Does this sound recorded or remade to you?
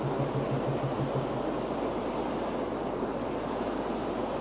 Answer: recorded